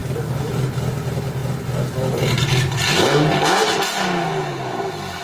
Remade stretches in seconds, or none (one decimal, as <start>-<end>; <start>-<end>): 0.0-0.5